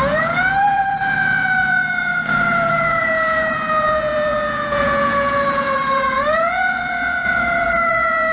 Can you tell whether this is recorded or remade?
remade